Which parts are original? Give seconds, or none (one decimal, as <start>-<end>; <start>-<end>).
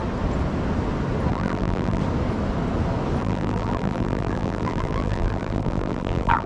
0.0-1.3; 2.0-3.2